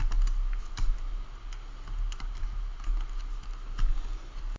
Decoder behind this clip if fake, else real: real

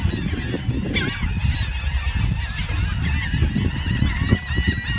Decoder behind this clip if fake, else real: real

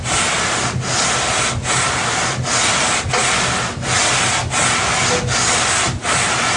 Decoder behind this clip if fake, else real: real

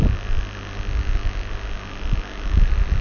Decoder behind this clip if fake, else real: real